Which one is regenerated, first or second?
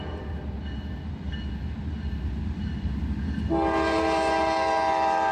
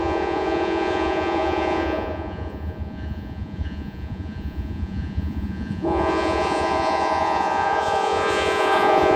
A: second